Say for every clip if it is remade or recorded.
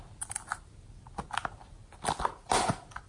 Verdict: recorded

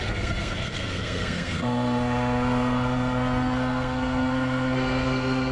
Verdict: remade